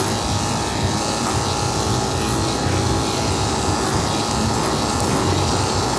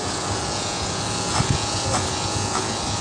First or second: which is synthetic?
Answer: second